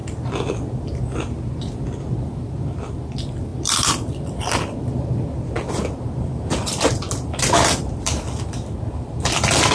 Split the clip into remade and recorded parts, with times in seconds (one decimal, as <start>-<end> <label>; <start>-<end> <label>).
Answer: 0.0-3.5 recorded; 3.5-8.4 remade; 8.4-9.7 recorded